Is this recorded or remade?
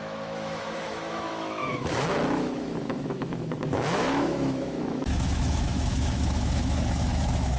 remade